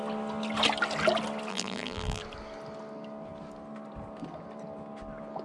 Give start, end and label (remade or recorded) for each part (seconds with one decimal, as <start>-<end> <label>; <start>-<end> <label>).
0.0-1.5 recorded; 1.5-2.2 remade; 2.2-5.4 recorded